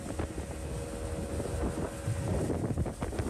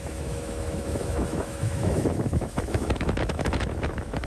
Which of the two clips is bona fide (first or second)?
first